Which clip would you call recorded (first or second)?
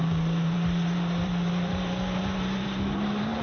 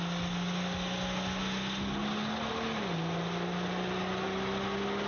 second